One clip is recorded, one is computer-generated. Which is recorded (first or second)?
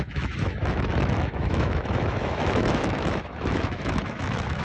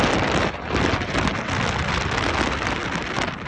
second